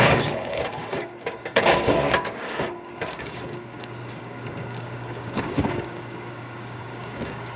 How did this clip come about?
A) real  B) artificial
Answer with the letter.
B